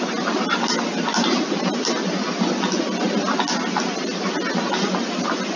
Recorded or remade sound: recorded